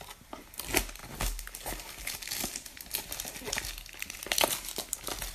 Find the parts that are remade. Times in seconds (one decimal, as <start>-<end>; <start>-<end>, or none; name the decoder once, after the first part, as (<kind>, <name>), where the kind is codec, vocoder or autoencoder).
none